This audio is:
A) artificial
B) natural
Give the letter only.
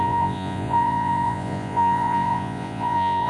A